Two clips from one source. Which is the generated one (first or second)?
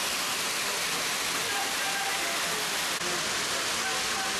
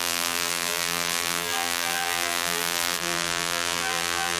second